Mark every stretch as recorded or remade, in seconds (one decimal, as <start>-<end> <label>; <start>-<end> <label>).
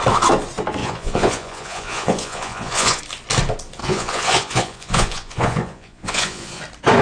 0.0-0.8 recorded; 0.8-3.0 remade; 3.0-3.8 recorded; 3.8-6.6 remade; 6.6-7.0 recorded